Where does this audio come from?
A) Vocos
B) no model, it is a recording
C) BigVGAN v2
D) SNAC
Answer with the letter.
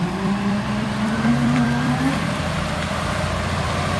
C